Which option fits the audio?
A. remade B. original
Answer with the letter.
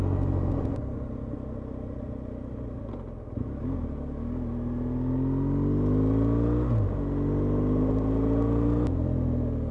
B